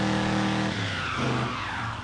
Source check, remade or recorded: remade